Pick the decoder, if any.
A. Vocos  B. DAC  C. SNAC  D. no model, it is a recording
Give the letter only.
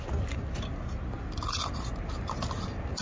D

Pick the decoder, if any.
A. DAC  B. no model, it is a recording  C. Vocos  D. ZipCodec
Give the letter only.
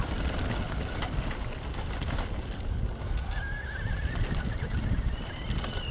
B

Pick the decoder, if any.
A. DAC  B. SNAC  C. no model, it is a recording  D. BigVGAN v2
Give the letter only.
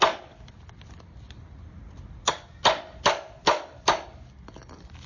C